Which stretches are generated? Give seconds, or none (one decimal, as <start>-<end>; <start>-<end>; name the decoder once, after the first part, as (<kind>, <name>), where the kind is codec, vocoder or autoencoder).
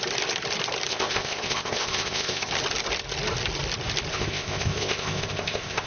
0.9-2.5 (codec, ZipCodec); 4.1-5.9